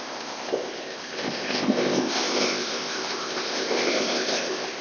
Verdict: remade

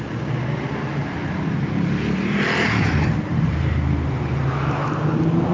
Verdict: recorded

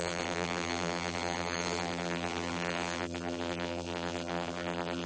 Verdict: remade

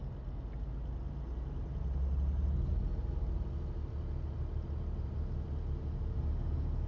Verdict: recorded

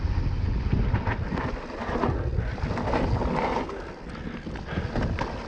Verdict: recorded